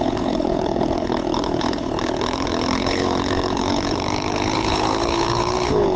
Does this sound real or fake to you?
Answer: fake